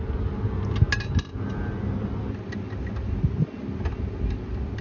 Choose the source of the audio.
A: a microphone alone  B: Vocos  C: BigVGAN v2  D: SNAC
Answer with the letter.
A